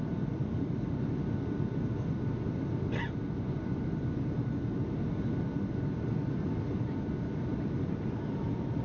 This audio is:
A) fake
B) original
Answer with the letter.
B